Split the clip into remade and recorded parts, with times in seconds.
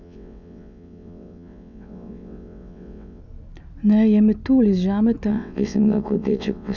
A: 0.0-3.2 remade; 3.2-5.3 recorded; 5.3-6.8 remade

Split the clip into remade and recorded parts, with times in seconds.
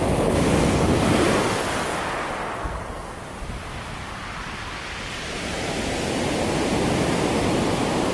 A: 0.0-2.6 recorded; 2.6-3.2 remade; 3.2-8.1 recorded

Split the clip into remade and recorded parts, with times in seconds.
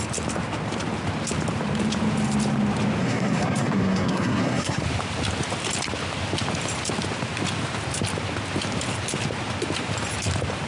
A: 0.0-3.0 recorded; 3.0-4.8 remade; 4.8-10.7 recorded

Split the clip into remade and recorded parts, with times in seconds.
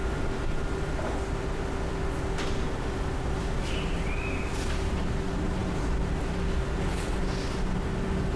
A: 0.0-8.4 recorded